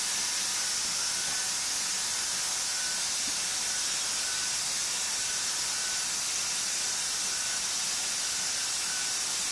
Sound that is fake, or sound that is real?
real